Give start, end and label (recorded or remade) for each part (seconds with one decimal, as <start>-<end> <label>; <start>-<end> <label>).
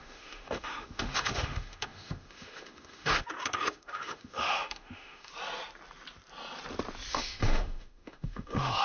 0.0-5.3 remade; 5.3-7.1 recorded; 7.1-8.8 remade